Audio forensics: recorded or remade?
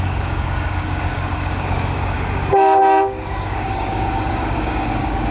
remade